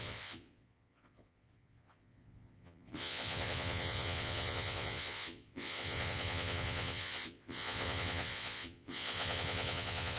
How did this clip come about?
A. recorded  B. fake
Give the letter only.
B